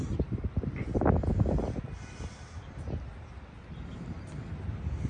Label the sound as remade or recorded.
recorded